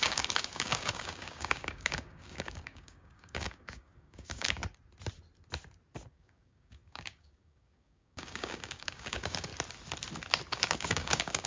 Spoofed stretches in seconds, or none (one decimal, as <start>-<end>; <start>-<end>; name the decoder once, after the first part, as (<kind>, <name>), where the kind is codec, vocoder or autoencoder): 0.0-4.6 (codec, DAC); 6.1-9.5; 10.5-11.5